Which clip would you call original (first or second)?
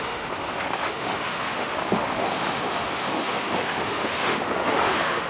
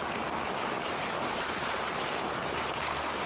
second